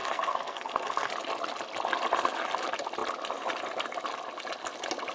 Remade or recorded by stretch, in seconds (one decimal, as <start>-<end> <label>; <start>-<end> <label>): 0.0-1.1 remade; 1.1-5.1 recorded